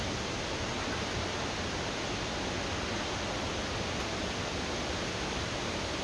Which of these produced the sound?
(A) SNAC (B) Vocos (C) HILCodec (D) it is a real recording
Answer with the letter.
D